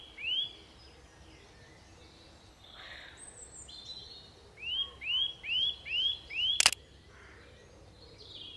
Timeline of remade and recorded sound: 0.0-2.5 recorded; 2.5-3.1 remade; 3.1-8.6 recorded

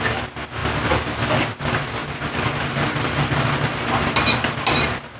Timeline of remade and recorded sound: 0.0-5.2 recorded

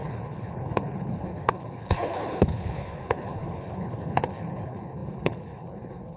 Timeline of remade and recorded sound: 0.0-6.2 remade

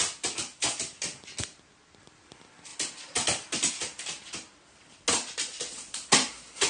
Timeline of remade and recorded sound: 0.0-6.7 recorded

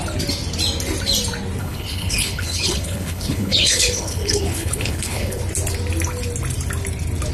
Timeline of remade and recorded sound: 0.0-1.6 recorded; 1.6-5.4 remade; 5.4-7.3 recorded

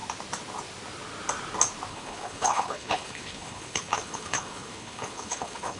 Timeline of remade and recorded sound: 0.0-1.9 recorded; 1.9-5.8 remade

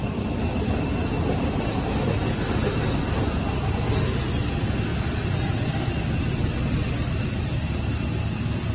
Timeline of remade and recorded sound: 0.0-8.7 recorded

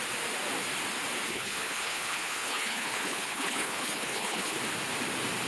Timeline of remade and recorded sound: 0.0-1.3 recorded; 1.3-4.6 remade; 4.6-5.5 recorded